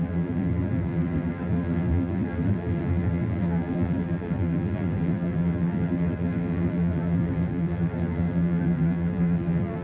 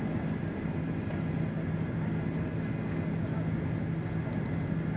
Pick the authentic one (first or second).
second